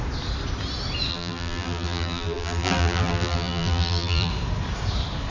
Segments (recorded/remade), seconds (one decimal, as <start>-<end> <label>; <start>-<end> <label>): 0.0-1.1 recorded; 1.1-4.3 remade; 4.3-5.3 recorded